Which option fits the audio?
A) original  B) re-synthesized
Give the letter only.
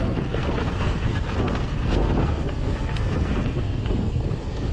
B